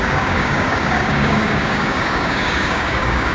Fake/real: fake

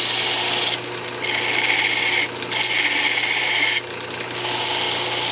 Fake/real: real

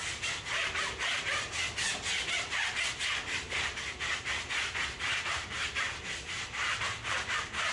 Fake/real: real